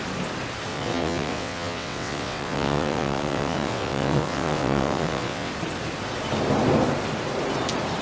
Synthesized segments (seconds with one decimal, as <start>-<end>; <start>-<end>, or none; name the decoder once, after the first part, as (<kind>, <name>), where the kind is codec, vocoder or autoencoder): 0.7-5.5 (vocoder, WaveNeXt)